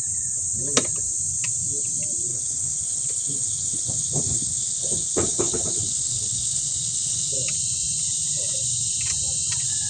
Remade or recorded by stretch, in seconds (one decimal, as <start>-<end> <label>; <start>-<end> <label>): 0.0-2.3 recorded; 2.3-7.3 remade; 7.3-9.9 recorded